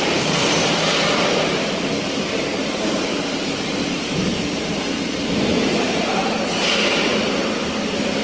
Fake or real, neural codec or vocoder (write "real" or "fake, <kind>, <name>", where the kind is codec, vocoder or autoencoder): fake, vocoder, BigVGAN v2